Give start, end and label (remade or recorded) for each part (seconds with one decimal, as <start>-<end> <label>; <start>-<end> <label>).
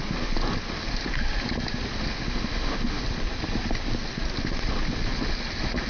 0.0-2.1 recorded; 2.1-3.0 remade; 3.0-5.9 recorded